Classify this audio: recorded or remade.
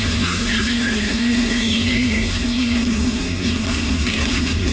remade